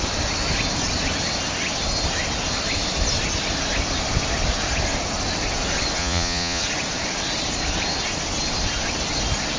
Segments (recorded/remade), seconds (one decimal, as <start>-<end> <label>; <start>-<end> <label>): 0.0-6.0 recorded; 6.0-6.6 remade; 6.6-9.6 recorded